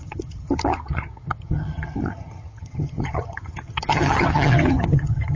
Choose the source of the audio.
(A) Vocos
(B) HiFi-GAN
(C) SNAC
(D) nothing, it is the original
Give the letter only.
B